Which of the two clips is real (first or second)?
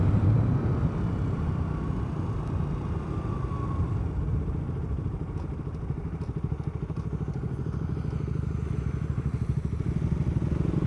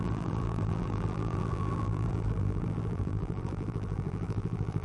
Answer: first